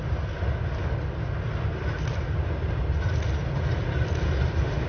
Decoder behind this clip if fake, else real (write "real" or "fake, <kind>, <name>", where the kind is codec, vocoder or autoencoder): real